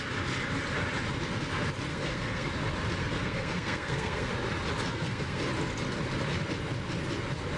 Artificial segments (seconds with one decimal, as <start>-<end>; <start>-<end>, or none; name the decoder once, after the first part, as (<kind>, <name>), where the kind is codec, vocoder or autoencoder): 1.9-2.5 (codec, SNAC); 3.0-4.3; 4.9-5.4